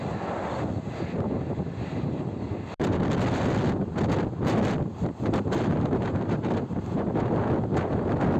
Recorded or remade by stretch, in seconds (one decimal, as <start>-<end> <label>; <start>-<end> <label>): 0.0-4.9 recorded; 4.9-7.3 remade; 7.3-8.4 recorded